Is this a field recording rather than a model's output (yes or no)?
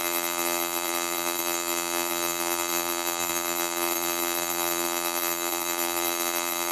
no